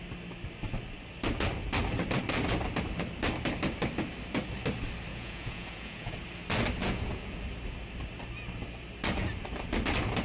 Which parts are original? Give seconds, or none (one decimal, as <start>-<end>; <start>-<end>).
0.0-5.1; 6.1-6.8; 7.4-10.2